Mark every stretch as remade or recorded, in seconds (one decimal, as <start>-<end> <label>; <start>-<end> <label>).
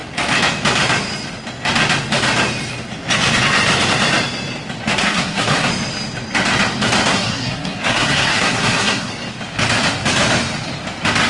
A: 0.0-5.0 recorded; 5.0-5.7 remade; 5.7-7.1 recorded; 7.1-9.1 remade; 9.1-11.3 recorded